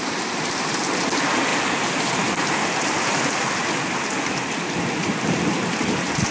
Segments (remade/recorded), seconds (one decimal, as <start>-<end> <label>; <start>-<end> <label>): 0.0-1.5 recorded; 1.5-2.6 remade; 2.6-6.3 recorded